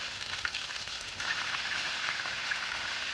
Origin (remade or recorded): remade